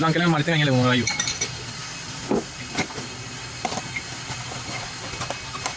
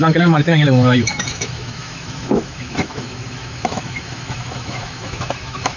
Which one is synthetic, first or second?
second